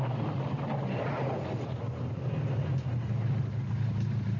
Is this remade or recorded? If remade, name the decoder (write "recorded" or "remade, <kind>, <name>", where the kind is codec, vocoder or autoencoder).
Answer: recorded